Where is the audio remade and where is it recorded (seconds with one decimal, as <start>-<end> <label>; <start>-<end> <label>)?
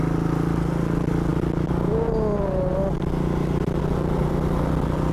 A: 0.0-5.1 recorded